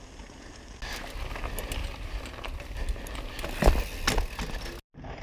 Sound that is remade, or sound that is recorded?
recorded